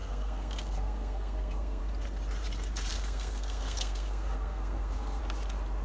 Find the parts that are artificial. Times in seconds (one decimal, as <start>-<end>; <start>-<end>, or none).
0.0-1.8; 2.9-5.2